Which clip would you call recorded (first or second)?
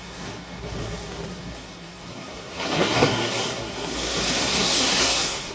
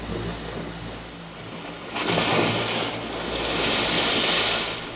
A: second